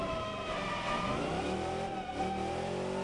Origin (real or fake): real